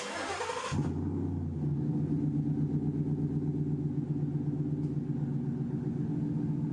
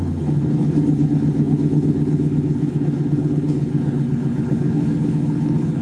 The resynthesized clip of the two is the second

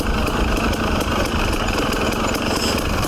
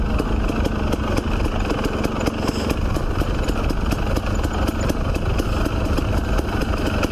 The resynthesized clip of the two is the first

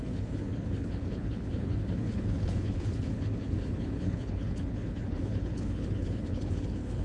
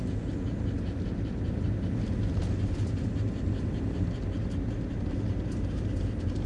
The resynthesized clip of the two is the first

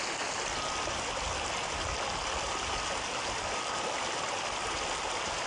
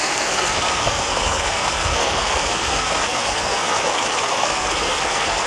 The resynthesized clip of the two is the second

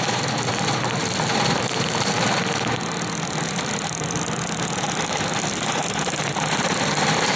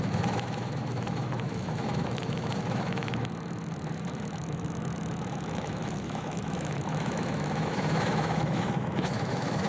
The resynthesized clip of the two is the second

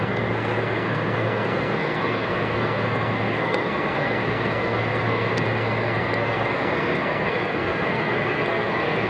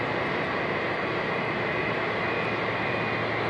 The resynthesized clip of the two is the first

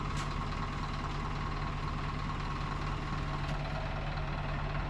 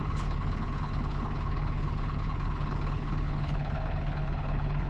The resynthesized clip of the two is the second